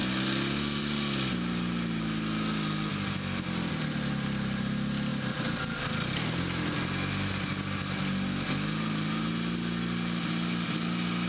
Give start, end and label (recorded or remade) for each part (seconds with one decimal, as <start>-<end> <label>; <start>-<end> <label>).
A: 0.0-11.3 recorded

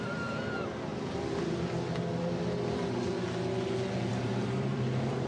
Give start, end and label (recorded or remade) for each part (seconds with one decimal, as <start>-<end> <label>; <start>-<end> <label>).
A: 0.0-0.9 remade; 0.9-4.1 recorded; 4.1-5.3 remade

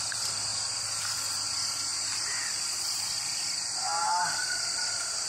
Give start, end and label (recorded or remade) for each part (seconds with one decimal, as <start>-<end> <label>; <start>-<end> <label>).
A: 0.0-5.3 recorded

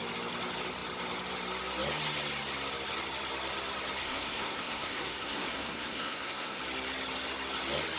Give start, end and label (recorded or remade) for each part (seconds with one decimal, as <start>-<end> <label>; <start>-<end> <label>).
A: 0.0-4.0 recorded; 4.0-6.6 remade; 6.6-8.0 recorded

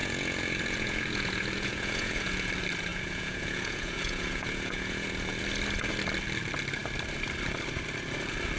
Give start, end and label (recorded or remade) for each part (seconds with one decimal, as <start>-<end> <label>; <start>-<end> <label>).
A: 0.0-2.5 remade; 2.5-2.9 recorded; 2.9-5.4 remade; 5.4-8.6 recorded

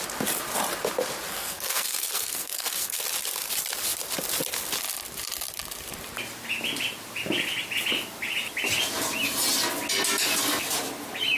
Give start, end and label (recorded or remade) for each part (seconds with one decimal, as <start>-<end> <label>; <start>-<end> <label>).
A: 0.0-1.3 recorded; 1.3-3.0 remade; 3.0-11.4 recorded